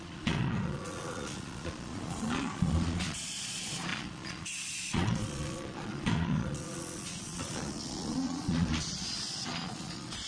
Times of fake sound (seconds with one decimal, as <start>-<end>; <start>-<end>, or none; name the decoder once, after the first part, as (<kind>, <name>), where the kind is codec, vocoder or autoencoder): 0.0-10.3 (vocoder, Vocos)